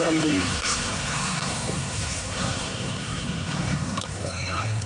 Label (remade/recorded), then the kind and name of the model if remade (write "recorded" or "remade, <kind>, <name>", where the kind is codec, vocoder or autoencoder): remade, codec, SNAC